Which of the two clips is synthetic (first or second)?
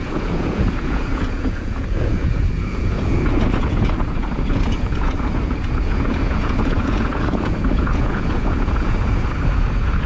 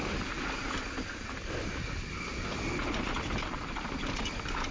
first